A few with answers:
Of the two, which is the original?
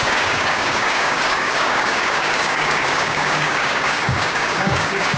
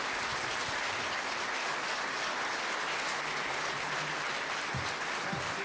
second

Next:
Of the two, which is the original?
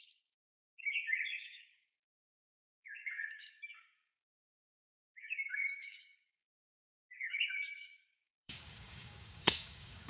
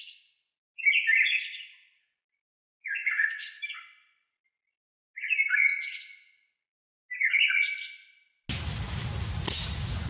second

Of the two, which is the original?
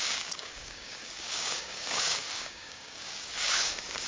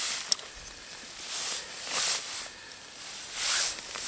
second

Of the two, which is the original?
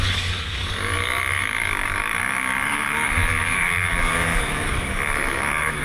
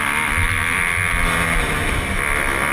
second